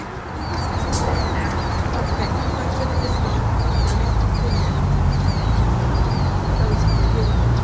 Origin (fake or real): real